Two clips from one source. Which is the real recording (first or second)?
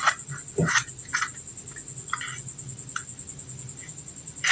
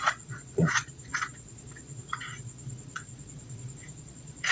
first